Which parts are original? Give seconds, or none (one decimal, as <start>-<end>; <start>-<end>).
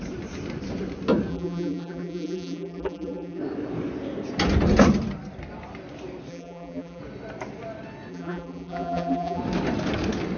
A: 0.0-1.3; 3.4-6.3; 7.0-8.1; 9.4-10.4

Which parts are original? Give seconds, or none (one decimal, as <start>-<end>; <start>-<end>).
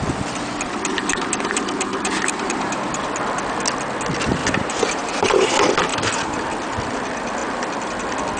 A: 0.0-1.0; 3.0-4.4; 5.5-5.9; 6.4-8.4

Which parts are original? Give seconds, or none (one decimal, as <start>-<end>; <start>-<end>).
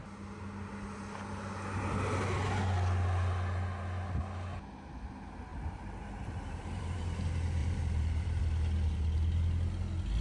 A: 0.0-5.5; 7.0-7.6; 8.4-10.2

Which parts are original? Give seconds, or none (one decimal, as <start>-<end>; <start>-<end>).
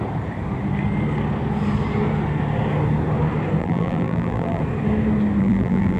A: 0.0-3.6; 4.6-5.4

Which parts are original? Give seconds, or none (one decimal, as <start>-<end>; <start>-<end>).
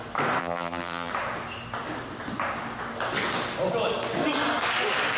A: 0.0-0.4; 1.1-5.2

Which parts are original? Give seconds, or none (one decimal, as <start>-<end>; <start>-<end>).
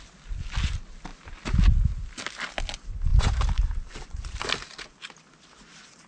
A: 0.0-3.1; 4.4-6.1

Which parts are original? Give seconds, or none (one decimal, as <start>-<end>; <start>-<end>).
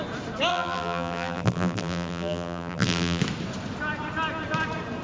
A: 0.0-0.5; 3.2-5.0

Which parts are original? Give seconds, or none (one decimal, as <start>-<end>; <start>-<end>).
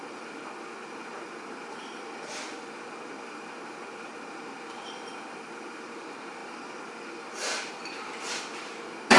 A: none